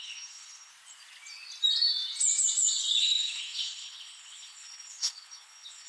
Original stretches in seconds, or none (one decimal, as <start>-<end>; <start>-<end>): 0.7-3.0